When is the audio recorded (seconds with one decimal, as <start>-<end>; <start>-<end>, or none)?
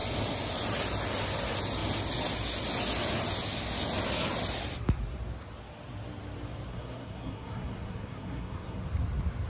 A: 0.0-6.7; 8.8-9.5